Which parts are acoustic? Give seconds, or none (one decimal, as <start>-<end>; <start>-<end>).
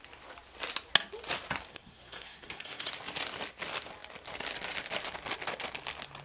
0.0-1.7; 2.9-6.2